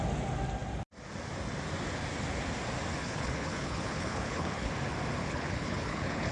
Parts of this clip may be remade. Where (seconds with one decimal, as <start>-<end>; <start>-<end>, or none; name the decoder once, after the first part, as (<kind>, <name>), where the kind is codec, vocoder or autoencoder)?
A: 3.0-4.7 (codec, HILCodec); 5.2-6.3